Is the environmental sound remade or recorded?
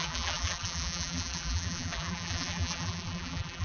remade